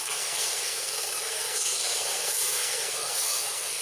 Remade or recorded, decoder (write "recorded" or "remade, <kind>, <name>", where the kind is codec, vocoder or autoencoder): remade, codec, SNAC